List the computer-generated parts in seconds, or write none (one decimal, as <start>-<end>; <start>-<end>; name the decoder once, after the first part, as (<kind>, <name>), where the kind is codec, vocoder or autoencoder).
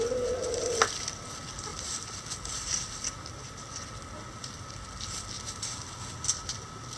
none